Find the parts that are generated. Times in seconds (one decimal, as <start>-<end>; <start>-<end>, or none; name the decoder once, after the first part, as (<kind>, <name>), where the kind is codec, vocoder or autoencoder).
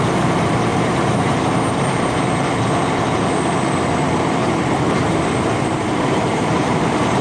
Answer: 0.7-1.5 (vocoder, BigVGAN v2); 4.4-7.2